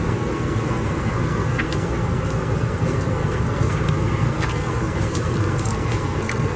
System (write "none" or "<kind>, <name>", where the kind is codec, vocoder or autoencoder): codec, SNAC